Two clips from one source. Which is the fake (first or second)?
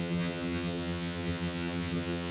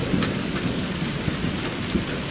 first